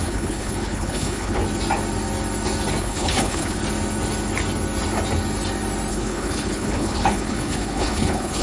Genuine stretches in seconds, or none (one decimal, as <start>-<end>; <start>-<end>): 1.4-2.8; 3.6-5.9